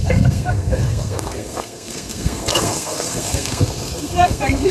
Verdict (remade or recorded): remade